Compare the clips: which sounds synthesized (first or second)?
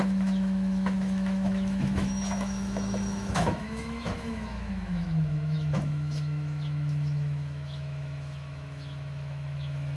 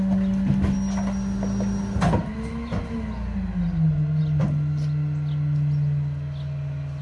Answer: first